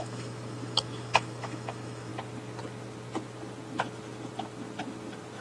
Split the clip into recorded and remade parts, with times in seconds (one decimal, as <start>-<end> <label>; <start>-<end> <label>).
0.0-2.1 remade; 2.1-5.4 recorded